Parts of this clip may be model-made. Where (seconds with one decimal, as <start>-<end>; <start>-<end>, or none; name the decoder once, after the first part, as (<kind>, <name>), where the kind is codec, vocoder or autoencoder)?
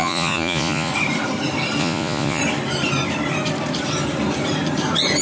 0.0-0.9 (vocoder, Vocos); 1.8-2.4